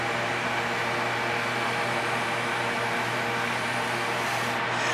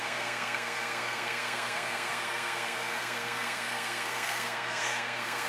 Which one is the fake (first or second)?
second